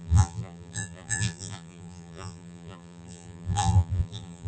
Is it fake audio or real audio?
fake